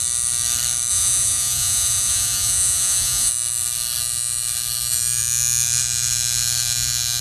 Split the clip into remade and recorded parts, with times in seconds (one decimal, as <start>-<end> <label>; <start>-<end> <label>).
0.0-0.9 recorded; 0.9-3.3 remade; 3.3-7.2 recorded

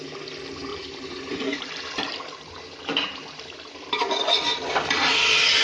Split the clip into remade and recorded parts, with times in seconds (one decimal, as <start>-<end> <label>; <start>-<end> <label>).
0.0-0.7 recorded; 0.7-4.1 remade; 4.1-5.6 recorded

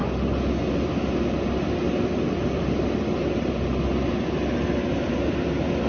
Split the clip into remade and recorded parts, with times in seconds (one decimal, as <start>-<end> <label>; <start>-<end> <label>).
0.0-5.9 recorded

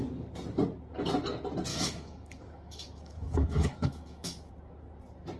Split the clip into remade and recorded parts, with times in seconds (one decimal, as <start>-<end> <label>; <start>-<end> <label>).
0.0-1.7 recorded; 1.7-4.5 remade; 4.5-5.4 recorded